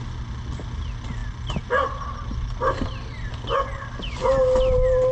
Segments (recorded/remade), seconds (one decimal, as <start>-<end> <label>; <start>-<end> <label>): 0.0-5.1 recorded